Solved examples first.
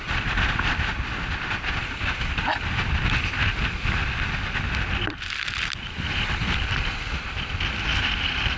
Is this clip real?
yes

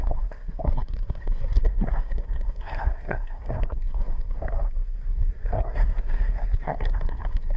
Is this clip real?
no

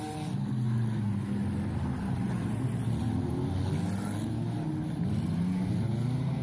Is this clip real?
yes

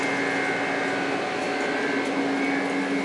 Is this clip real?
yes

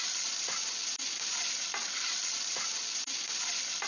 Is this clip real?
yes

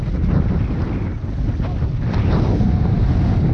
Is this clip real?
yes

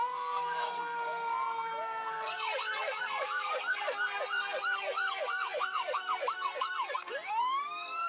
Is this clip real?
no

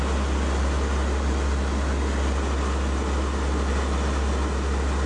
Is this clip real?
yes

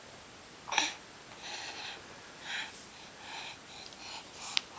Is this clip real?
yes